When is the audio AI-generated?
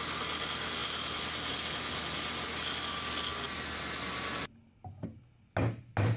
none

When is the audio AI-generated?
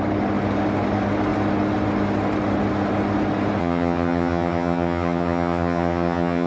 3.6-6.5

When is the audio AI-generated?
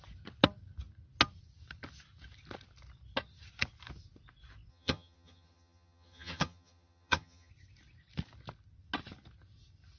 4.7-7.5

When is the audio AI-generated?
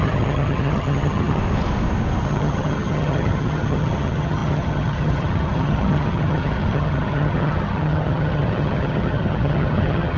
0.0-1.4; 2.2-10.2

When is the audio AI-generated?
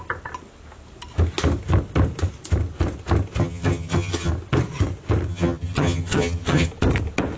3.4-4.3; 5.3-6.7